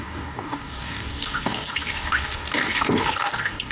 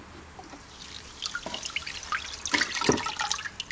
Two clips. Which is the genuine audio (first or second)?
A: second